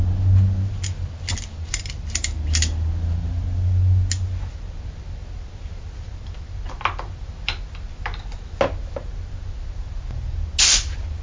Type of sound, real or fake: real